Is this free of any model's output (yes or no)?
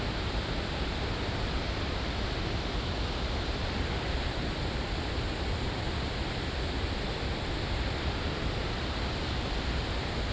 yes